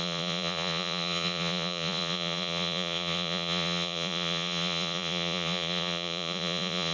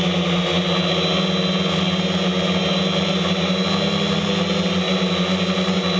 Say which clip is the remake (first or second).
first